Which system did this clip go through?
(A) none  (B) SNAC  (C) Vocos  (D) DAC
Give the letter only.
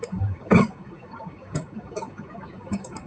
D